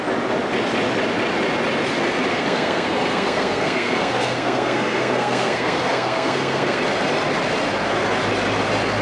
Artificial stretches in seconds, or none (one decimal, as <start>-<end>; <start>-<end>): 2.3-6.8